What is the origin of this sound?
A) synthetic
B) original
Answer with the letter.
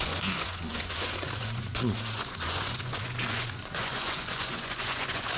A